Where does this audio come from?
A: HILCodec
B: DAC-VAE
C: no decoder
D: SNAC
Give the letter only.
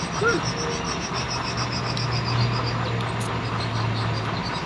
C